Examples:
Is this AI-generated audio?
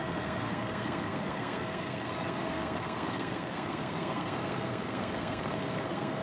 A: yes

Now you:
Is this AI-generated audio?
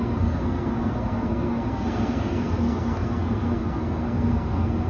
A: yes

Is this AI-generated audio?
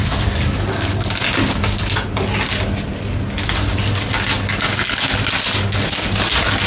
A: no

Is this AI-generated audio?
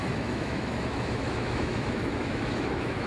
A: yes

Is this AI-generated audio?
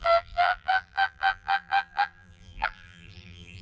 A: yes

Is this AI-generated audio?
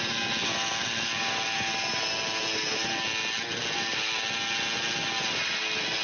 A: no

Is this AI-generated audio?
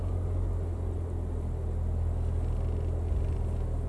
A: no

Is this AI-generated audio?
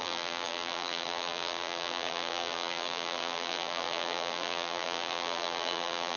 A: yes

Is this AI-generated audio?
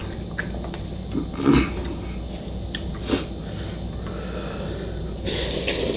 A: no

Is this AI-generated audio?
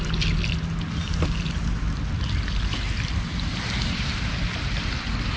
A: no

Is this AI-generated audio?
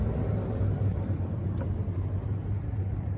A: yes